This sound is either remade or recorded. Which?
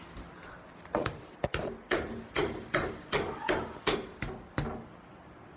recorded